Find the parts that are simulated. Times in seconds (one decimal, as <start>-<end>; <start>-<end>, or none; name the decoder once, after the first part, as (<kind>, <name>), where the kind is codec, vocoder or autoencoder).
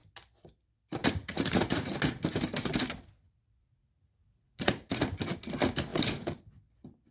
1.0-1.9 (vocoder, Vocos); 3.6-5.0